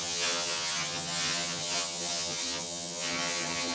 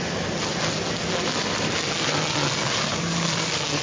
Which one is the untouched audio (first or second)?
second